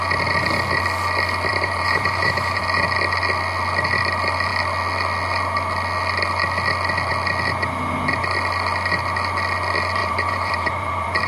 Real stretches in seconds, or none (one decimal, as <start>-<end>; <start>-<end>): 0.0-1.5; 2.6-10.0